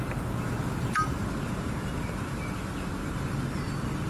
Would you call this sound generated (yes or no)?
no